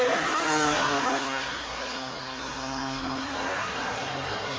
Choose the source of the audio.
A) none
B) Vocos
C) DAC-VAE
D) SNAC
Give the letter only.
D